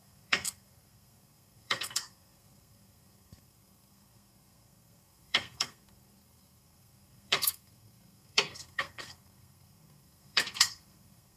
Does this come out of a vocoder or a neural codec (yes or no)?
yes